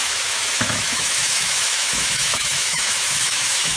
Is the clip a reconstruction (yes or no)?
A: yes